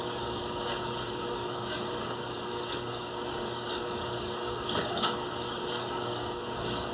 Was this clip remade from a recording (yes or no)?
yes